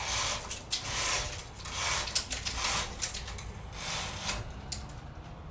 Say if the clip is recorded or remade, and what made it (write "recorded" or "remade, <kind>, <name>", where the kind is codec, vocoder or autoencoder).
recorded